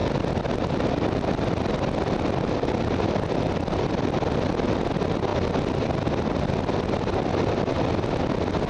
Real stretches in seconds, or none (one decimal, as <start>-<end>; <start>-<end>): 0.0-8.7